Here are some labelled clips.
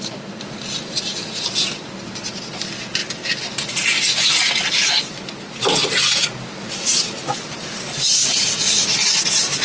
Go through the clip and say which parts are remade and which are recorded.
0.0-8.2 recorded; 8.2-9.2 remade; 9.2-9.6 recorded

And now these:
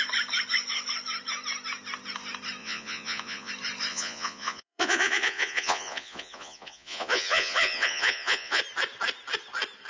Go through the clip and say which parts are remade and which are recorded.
0.0-2.6 recorded; 2.6-3.5 remade; 3.5-3.9 recorded; 3.9-8.6 remade; 8.6-9.9 recorded

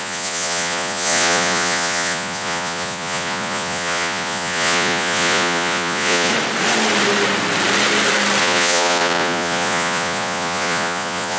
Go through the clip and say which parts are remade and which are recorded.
0.0-6.3 remade; 6.3-8.4 recorded; 8.4-11.4 remade